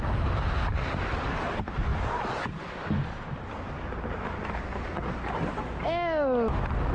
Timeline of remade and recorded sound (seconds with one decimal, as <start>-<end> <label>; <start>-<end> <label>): 0.0-1.9 recorded; 1.9-4.0 remade; 4.0-6.9 recorded

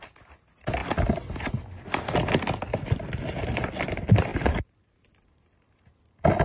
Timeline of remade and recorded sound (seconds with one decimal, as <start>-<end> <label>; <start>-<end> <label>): 0.0-6.4 recorded